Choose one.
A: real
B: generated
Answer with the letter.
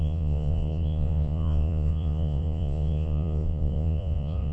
B